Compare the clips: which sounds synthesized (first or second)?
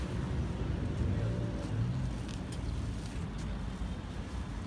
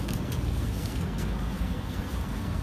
second